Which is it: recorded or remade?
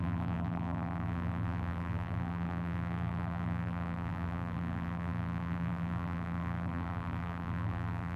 remade